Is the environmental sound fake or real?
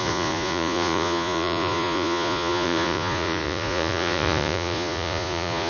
fake